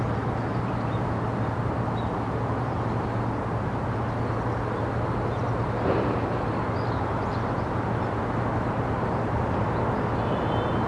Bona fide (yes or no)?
yes